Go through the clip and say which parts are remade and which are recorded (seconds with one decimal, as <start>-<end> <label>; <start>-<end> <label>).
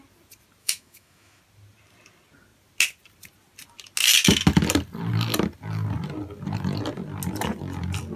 0.0-0.6 recorded; 0.6-1.4 remade; 1.4-8.2 recorded